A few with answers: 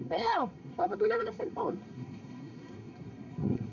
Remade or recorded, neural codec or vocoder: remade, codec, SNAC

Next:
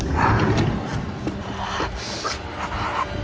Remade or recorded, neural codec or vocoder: recorded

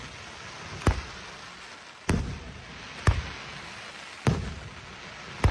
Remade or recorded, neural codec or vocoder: recorded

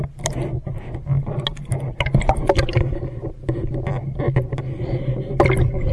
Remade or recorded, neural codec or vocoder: recorded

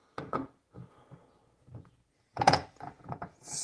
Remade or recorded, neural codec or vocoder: remade, vocoder, Vocos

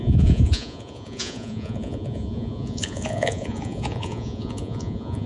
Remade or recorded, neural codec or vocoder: remade, vocoder, Vocos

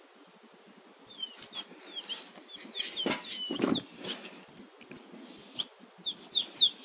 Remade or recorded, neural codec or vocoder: recorded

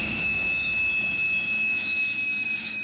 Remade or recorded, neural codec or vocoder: remade, autoencoder, DAC-VAE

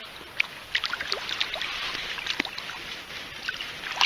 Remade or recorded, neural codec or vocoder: recorded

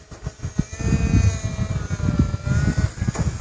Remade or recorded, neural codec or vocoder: recorded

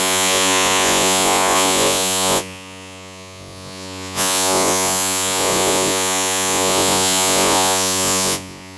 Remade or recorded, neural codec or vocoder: remade, vocoder, Vocos